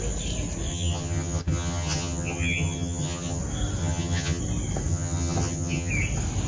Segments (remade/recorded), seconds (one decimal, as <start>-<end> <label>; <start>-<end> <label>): 0.0-0.7 recorded; 0.7-3.4 remade; 3.4-3.8 recorded; 3.8-4.4 remade; 4.4-4.9 recorded; 4.9-5.9 remade; 5.9-6.5 recorded